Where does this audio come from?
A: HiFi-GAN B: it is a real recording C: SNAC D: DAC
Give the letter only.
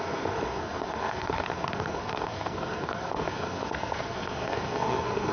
C